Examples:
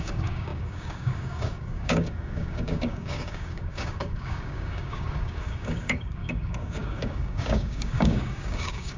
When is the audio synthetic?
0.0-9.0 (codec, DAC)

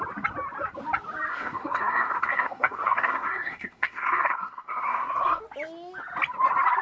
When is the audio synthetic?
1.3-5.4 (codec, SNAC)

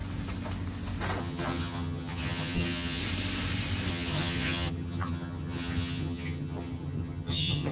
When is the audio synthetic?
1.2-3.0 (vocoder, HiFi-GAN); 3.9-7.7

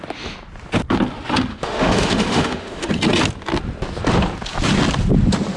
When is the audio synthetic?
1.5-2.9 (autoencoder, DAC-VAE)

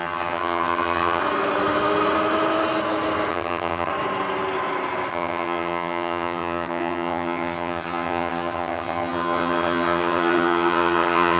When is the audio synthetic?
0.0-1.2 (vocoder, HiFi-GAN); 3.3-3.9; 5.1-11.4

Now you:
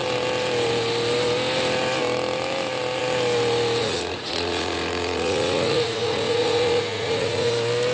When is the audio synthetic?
3.8-7.5 (vocoder, Vocos)